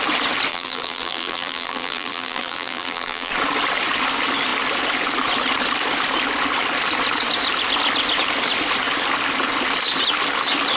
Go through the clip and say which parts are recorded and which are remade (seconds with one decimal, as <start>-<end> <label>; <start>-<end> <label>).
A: 0.0-0.5 recorded; 0.5-3.3 remade; 3.3-10.8 recorded